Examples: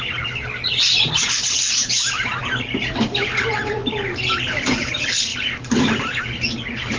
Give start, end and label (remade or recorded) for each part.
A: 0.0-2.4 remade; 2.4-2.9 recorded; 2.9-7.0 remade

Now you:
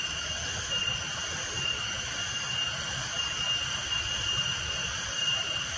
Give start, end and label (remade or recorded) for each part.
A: 0.0-4.8 recorded; 4.8-5.8 remade